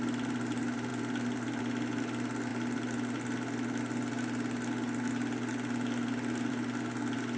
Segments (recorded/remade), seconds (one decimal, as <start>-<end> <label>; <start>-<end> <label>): 0.0-7.4 recorded